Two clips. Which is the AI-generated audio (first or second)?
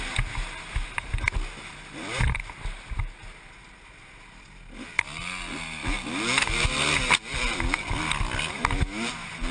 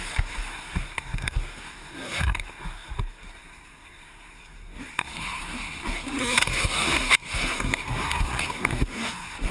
second